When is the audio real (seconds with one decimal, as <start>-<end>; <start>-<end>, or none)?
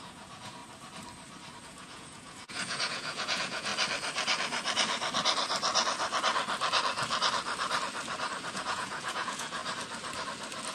0.6-1.6; 3.7-8.5; 9.6-10.7